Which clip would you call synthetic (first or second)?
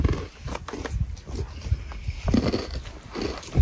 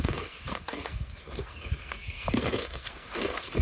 second